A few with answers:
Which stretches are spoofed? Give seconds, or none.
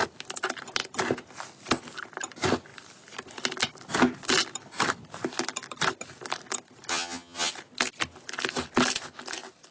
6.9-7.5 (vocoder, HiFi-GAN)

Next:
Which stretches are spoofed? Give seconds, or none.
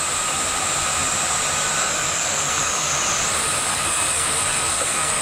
1.8-2.9 (codec, SNAC); 3.7-5.2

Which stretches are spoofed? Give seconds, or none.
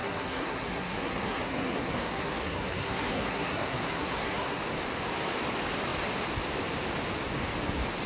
0.0-4.6 (codec, SNAC)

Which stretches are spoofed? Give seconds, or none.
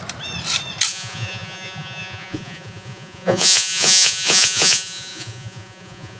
0.9-6.2 (vocoder, Vocos)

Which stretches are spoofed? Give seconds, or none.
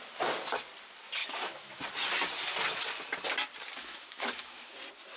1.2-1.8 (autoencoder, DAC-VAE); 3.8-4.7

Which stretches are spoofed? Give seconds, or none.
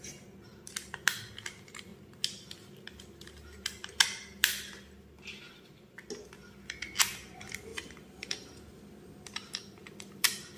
7.7-8.8 (vocoder, BigVGAN v2); 9.8-10.6